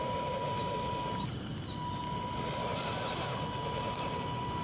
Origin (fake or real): real